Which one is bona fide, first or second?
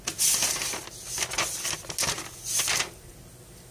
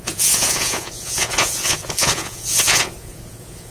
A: first